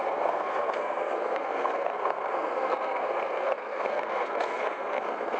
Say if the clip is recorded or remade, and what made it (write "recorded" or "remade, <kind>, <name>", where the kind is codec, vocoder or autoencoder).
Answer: remade, codec, SNAC